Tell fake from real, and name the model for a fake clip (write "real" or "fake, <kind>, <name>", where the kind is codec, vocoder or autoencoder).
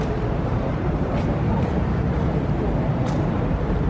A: fake, vocoder, BigVGAN v2